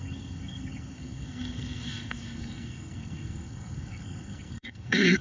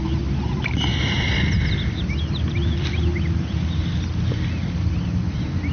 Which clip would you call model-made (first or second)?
first